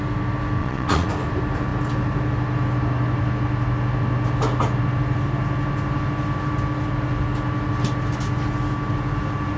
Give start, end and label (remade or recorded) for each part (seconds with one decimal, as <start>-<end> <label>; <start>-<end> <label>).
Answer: 0.0-0.6 recorded; 0.6-1.1 remade; 1.1-9.6 recorded